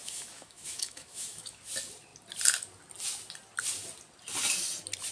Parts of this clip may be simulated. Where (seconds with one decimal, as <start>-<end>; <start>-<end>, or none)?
0.0-1.6